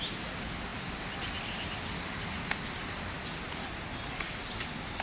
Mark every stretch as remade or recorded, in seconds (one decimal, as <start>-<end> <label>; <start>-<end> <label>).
0.0-5.0 recorded